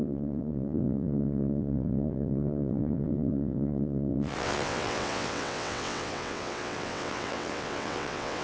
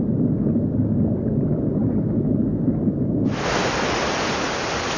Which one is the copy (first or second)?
first